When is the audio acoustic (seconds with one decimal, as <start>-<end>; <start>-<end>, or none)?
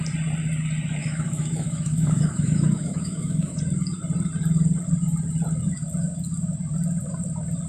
0.0-1.0; 3.6-7.7